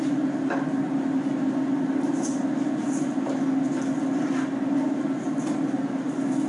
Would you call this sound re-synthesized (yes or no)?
no